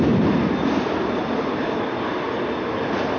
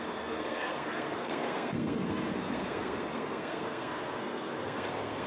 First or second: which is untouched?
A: first